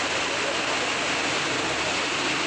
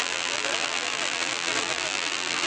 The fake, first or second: second